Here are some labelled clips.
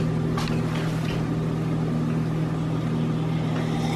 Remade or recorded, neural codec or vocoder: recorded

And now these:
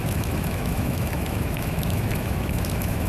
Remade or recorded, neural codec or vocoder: remade, autoencoder, DAC-VAE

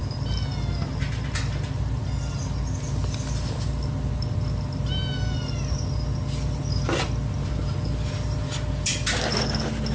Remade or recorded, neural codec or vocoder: recorded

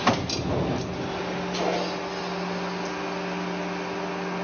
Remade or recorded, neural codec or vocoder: recorded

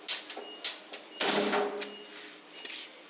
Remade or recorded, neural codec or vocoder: recorded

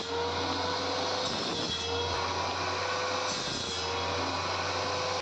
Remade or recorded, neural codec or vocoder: recorded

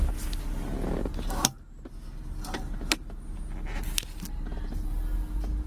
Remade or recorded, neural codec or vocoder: recorded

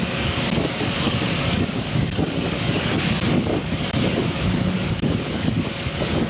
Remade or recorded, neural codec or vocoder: remade, codec, DAC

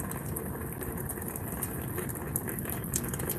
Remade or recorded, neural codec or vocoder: recorded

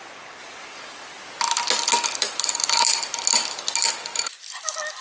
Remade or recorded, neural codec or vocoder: recorded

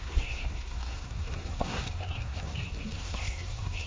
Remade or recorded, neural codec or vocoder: remade, codec, SNAC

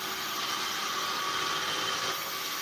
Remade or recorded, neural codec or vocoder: recorded